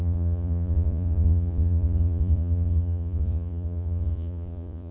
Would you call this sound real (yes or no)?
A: no